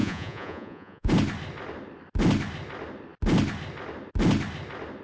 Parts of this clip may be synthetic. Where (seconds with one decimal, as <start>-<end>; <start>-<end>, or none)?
0.0-1.1